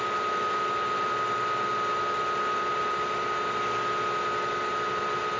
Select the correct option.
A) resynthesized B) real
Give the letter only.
B